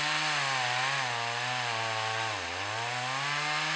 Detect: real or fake real